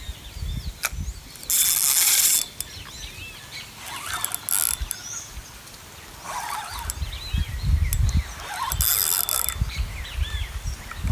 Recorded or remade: recorded